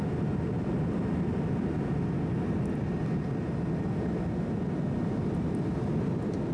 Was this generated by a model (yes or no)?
no